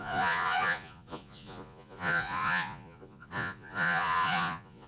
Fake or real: fake